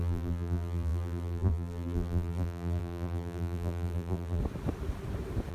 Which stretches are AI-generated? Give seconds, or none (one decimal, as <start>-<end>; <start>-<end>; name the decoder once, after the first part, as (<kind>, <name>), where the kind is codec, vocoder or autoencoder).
0.0-4.4 (vocoder, BigVGAN v2)